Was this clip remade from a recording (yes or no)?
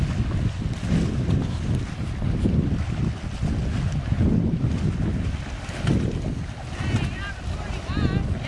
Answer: no